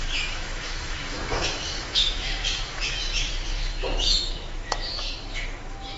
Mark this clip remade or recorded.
remade